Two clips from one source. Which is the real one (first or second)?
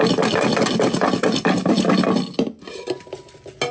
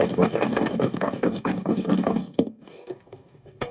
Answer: first